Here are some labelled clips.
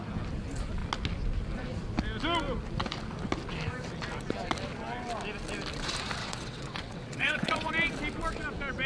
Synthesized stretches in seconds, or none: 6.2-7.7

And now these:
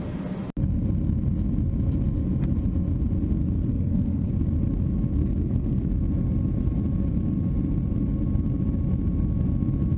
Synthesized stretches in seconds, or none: 3.7-4.3; 5.1-5.9

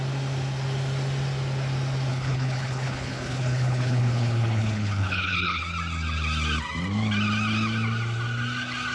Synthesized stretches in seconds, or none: 2.1-5.6

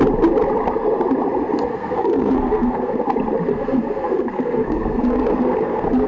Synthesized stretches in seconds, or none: 1.7-3.0; 3.5-6.1

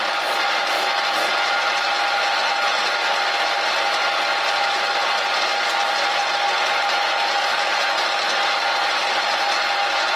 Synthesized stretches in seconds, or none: none

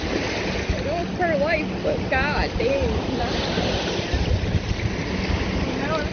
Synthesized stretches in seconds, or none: none

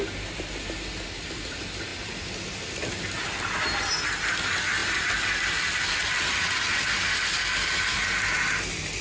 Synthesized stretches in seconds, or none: none